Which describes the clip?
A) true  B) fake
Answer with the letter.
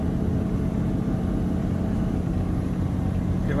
A